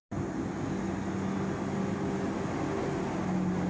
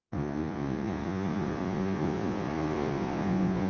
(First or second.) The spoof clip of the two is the second